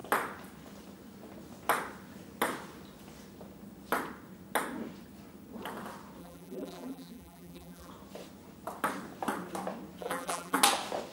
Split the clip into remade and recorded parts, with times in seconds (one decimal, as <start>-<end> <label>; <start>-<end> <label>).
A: 0.0-6.2 recorded; 6.2-7.9 remade; 7.9-10.0 recorded; 10.0-10.6 remade; 10.6-11.1 recorded